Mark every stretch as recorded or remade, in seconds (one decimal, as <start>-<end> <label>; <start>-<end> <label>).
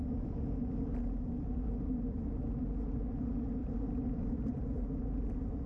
0.0-3.6 recorded; 3.6-5.0 remade; 5.0-5.7 recorded